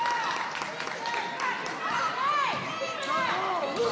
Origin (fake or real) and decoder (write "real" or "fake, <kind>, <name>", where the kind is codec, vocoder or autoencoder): real